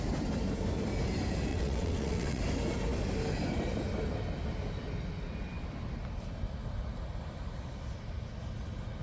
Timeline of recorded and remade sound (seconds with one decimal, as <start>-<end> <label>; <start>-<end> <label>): 0.0-1.5 recorded; 1.5-2.4 remade; 2.4-9.0 recorded